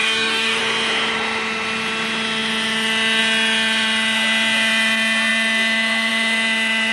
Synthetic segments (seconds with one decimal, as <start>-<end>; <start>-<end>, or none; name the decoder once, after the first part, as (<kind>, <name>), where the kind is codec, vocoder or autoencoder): 0.0-0.6 (codec, DAC)